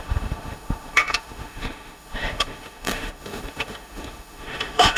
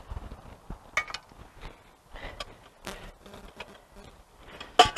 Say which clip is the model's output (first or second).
first